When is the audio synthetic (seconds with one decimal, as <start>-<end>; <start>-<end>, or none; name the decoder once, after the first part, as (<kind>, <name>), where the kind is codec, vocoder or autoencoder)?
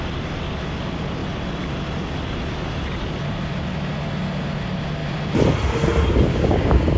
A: 6.3-7.0 (codec, DAC)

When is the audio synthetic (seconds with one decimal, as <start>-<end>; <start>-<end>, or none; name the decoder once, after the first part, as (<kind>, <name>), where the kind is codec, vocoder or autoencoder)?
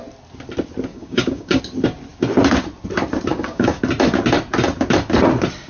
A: 0.9-1.6 (codec, DAC); 3.3-3.8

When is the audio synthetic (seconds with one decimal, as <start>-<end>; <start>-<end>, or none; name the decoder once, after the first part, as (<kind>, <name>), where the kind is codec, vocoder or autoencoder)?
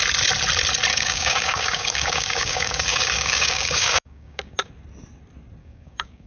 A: 0.9-4.7 (codec, DAC); 5.6-6.3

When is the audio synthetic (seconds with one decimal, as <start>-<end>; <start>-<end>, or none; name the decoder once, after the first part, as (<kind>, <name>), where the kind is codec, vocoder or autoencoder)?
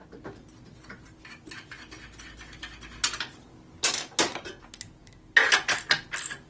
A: none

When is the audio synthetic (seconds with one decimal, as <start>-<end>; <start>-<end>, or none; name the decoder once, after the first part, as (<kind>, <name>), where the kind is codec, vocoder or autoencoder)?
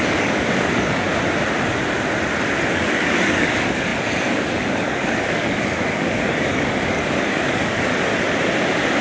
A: 0.0-1.1 (codec, DAC); 2.7-7.9